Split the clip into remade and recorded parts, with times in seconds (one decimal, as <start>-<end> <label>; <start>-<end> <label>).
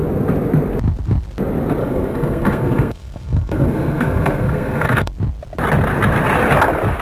0.0-1.8 recorded; 1.8-5.1 remade; 5.1-7.0 recorded